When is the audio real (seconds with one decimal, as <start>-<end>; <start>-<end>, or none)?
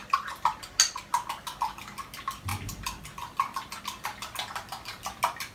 0.0-5.5